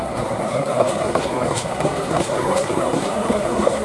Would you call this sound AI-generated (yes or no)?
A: yes